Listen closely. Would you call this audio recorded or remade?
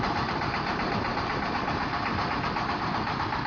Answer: remade